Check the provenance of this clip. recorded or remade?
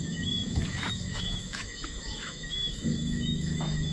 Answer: remade